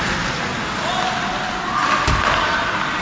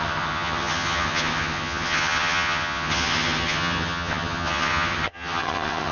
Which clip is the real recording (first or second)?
first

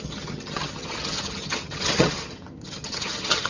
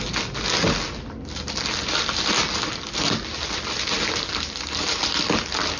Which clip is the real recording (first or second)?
second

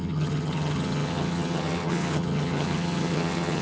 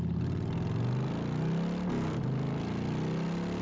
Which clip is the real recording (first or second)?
second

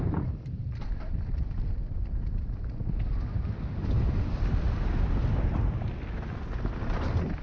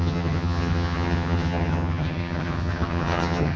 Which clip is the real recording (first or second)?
first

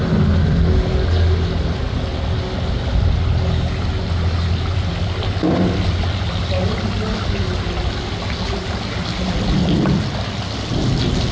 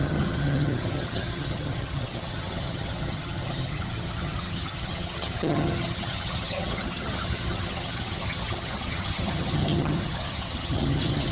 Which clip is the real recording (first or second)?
first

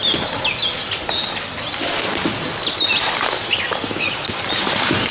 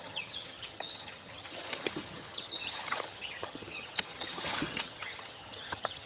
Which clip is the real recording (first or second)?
first